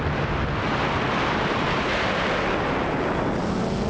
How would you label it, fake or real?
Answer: real